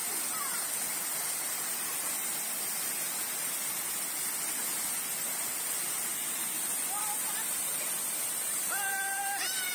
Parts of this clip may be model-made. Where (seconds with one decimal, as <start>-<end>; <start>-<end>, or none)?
0.0-2.8; 6.2-9.7